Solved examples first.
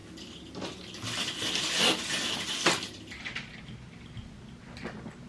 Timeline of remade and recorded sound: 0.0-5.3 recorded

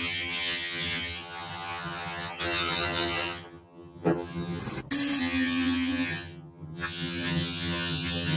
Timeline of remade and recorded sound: 0.0-4.6 remade; 4.6-5.2 recorded; 5.2-8.4 remade

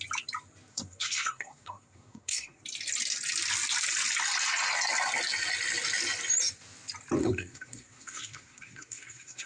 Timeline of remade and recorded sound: 0.0-0.7 recorded; 0.7-2.6 remade; 2.6-7.2 recorded; 7.2-9.5 remade

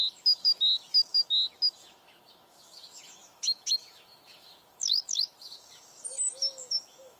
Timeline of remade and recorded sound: 0.0-7.2 remade

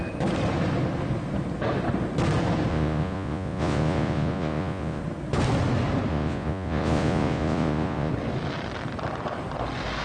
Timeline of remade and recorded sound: 0.0-2.7 recorded; 2.7-5.0 remade; 5.0-6.1 recorded; 6.1-8.1 remade; 8.1-10.0 recorded

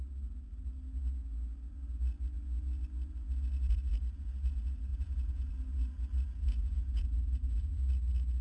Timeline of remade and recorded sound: 0.0-4.9 recorded; 4.9-5.5 remade; 5.5-6.5 recorded; 6.5-7.8 remade; 7.8-8.4 recorded

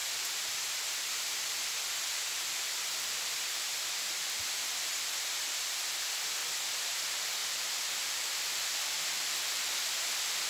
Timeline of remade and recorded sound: 0.0-2.2 recorded; 2.2-7.4 remade; 7.4-9.7 recorded; 9.7-10.5 remade